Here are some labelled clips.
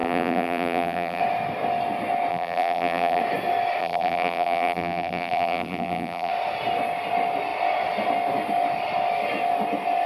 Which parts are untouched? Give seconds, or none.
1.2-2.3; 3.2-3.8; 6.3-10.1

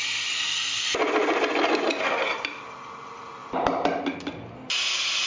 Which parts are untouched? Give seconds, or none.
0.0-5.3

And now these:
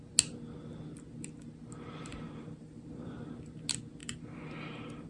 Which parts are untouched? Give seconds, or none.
0.0-2.1; 3.3-4.0

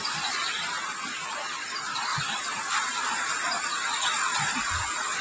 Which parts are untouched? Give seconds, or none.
0.0-2.1

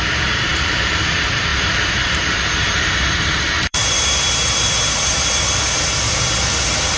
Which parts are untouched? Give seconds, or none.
none

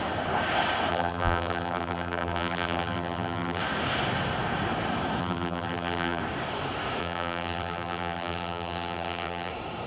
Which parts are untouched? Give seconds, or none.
0.0-0.9; 3.6-5.2; 6.2-7.0; 9.5-9.9

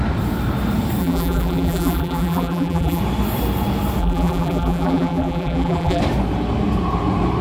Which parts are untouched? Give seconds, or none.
0.0-1.0; 3.0-4.0; 6.0-7.4

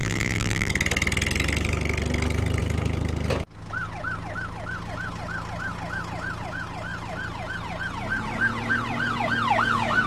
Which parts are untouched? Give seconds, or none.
0.7-10.1